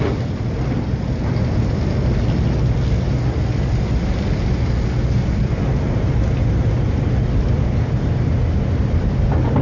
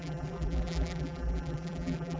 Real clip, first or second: first